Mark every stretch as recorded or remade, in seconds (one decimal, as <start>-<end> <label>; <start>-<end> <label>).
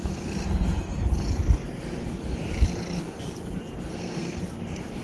0.0-3.9 recorded; 3.9-4.4 remade; 4.4-5.0 recorded